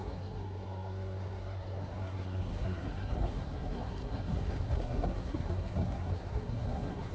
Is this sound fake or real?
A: fake